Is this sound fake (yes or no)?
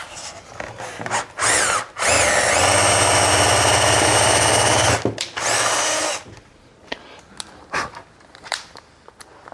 no